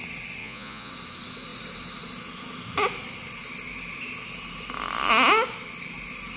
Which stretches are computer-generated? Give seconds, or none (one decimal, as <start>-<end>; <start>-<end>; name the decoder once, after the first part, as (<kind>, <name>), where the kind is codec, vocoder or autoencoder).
0.4-0.9 (vocoder, Vocos)